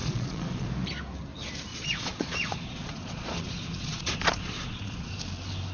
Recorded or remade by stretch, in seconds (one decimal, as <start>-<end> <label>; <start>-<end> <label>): 0.0-0.7 remade; 0.7-1.7 recorded; 1.7-5.1 remade; 5.1-5.7 recorded